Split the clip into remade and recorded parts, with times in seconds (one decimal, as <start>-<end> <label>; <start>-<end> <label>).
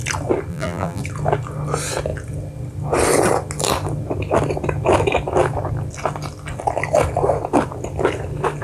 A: 0.0-0.5 recorded; 0.5-1.0 remade; 1.0-8.6 recorded